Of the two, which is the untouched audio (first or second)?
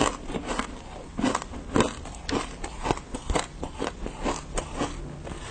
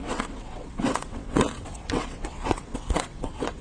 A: first